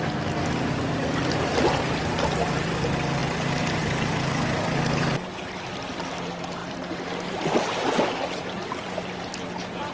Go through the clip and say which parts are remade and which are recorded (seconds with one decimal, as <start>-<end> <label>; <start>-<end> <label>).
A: 0.0-9.9 recorded